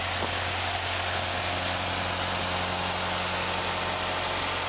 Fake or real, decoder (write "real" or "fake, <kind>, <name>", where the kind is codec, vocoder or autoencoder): real